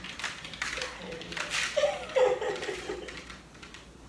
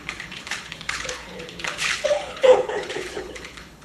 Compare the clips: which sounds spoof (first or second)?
second